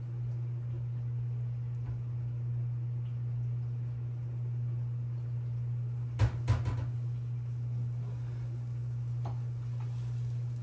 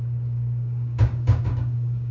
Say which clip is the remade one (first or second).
second